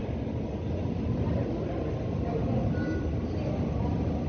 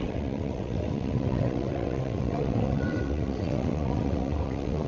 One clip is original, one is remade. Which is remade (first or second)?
second